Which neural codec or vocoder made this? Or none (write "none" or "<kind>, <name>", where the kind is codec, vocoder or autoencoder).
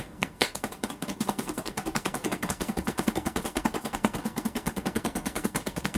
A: codec, SNAC